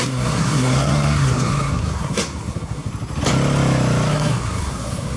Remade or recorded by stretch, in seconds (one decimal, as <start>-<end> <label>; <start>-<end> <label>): 0.0-2.9 remade; 2.9-4.1 recorded; 4.1-5.2 remade

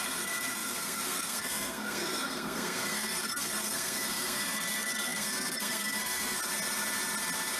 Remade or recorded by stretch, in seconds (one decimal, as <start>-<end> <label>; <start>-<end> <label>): 0.0-6.4 remade; 6.4-7.6 recorded

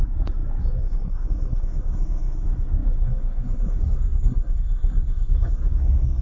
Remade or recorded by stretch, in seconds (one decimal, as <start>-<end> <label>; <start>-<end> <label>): 0.0-6.2 remade

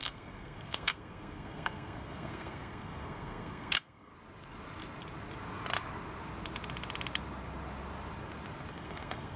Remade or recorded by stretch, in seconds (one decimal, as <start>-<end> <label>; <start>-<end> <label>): 0.0-4.1 remade; 4.1-8.7 recorded; 8.7-9.4 remade

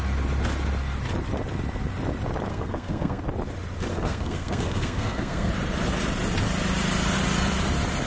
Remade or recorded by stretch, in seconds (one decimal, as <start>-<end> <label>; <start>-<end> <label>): 0.0-2.5 recorded; 2.5-3.2 remade; 3.2-3.9 recorded; 3.9-5.5 remade; 5.5-8.1 recorded